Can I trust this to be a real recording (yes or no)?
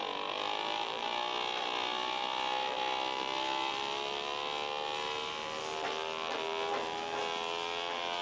yes